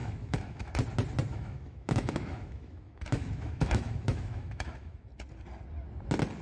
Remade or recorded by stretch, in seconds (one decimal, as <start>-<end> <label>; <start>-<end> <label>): 0.0-0.7 remade; 0.7-1.3 recorded; 1.3-5.1 remade; 5.1-6.4 recorded